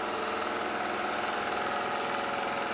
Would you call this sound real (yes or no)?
yes